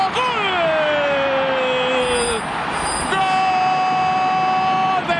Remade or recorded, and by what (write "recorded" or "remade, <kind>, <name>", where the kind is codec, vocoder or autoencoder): recorded